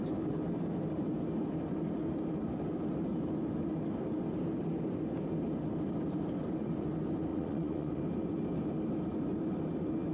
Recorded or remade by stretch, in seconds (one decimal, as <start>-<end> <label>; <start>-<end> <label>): 0.0-7.3 recorded; 7.3-8.0 remade; 8.0-10.1 recorded